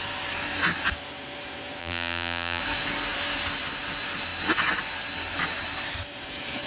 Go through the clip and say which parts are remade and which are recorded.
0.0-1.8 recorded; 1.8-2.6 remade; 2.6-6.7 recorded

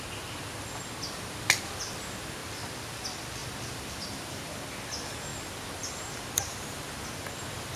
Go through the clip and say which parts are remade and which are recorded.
0.0-2.4 recorded; 2.4-3.0 remade; 3.0-3.4 recorded; 3.4-4.7 remade; 4.7-5.3 recorded; 5.3-6.3 remade; 6.3-7.8 recorded